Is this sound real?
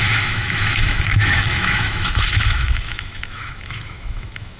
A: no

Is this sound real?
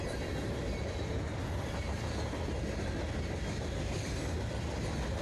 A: yes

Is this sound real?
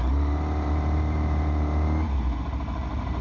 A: yes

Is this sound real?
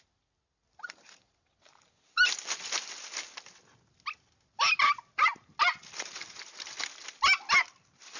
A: yes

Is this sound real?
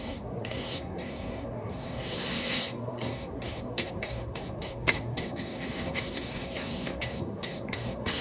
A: no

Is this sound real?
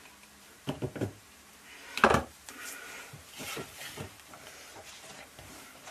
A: no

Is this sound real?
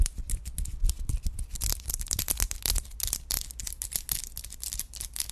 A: yes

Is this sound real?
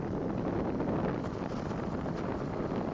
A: yes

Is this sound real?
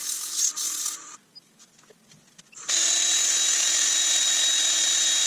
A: yes